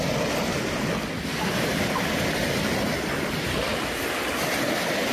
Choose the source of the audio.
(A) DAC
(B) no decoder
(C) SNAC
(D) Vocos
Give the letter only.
B